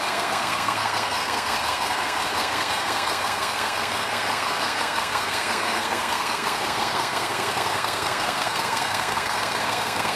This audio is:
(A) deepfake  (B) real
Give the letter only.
A